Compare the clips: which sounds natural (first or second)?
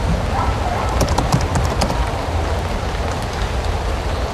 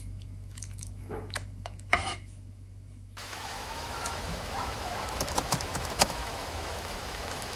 first